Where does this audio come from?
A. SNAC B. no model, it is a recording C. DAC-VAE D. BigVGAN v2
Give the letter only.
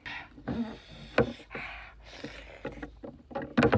B